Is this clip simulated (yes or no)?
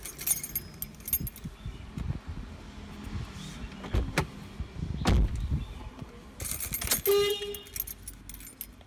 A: no